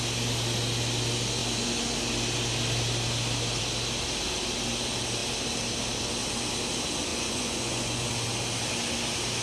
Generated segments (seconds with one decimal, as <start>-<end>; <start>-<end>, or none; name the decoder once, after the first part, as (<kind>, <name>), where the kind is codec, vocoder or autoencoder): 7.1-8.1 (vocoder, Vocos)